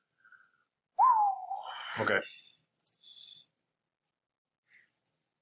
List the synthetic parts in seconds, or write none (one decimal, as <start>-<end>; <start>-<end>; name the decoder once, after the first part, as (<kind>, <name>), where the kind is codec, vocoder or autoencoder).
none